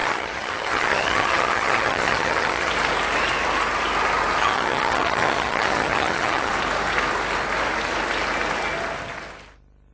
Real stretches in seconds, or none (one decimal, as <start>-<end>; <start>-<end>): 2.7-4.4; 6.5-9.9